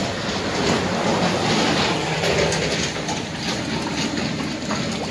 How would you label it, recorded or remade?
recorded